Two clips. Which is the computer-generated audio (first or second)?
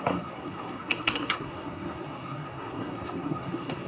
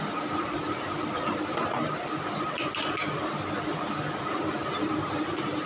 first